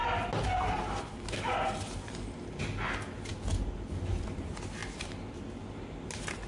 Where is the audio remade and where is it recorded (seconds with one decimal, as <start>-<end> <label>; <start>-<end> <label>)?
0.0-6.5 recorded